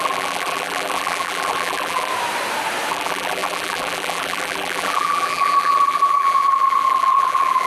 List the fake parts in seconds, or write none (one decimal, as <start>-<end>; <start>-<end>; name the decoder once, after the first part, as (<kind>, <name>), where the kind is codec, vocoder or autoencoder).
0.0-2.1 (vocoder, BigVGAN v2); 2.9-7.7